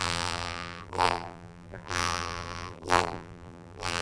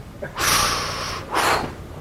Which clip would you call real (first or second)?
second